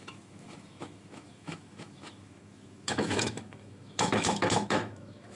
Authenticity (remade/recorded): remade